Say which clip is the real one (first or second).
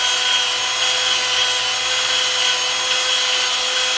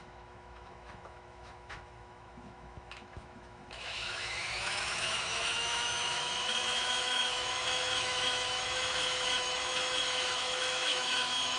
first